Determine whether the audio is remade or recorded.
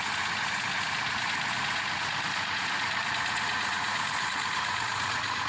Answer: remade